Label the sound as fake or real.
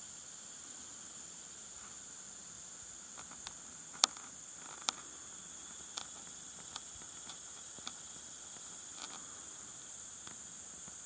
real